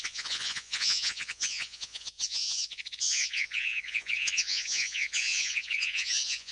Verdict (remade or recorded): remade